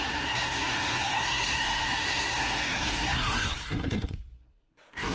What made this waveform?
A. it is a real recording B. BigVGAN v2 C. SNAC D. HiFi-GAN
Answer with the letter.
C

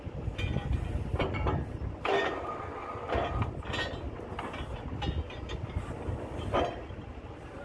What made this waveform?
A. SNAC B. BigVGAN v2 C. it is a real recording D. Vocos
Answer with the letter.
C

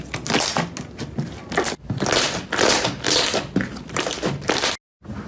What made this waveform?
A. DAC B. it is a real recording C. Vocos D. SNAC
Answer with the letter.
B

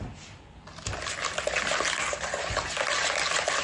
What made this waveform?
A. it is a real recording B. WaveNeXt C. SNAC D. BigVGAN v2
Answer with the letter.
A